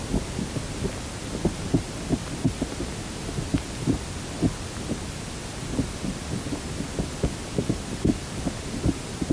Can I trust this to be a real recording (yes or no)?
yes